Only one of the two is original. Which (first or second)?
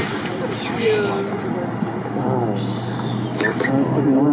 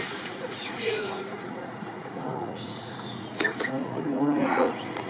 first